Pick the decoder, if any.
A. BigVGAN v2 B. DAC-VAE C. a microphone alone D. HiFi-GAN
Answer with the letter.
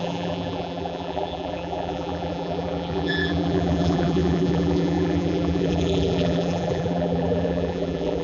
A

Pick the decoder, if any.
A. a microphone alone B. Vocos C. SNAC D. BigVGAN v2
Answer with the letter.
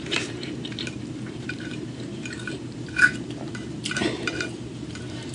D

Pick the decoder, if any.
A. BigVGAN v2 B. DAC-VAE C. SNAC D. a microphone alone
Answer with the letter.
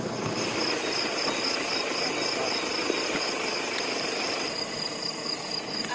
D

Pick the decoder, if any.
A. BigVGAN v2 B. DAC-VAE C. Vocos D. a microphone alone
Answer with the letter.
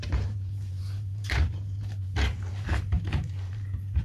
A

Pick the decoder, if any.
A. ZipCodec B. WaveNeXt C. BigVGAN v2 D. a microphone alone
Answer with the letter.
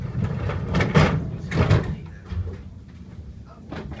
C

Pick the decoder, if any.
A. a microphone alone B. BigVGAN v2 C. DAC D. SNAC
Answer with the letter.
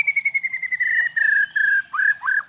A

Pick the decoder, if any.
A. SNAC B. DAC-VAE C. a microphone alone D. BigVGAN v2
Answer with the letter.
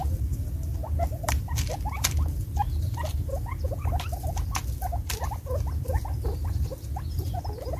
C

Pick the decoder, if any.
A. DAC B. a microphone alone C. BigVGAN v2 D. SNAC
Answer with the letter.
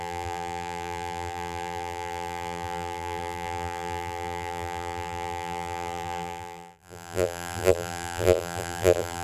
C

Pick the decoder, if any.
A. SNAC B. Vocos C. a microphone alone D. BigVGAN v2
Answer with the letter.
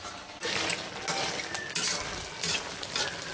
C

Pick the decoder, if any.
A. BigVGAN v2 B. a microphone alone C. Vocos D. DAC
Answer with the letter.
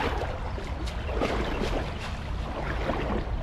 B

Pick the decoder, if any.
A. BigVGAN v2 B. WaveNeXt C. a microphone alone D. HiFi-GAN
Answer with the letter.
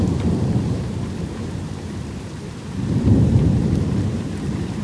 A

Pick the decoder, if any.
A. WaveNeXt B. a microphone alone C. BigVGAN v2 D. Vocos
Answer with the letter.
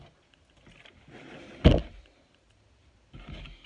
B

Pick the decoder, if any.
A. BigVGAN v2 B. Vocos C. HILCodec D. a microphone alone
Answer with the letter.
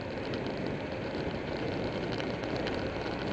A